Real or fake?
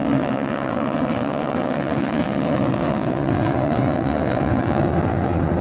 fake